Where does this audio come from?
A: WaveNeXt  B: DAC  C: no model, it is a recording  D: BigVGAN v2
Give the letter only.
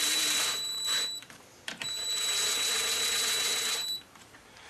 D